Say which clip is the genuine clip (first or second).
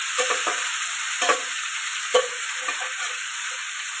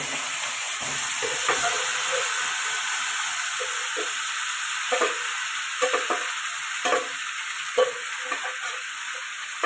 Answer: second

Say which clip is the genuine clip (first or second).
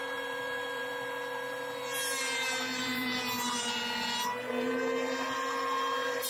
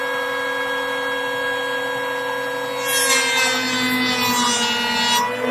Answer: second